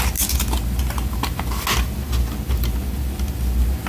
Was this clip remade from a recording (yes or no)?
no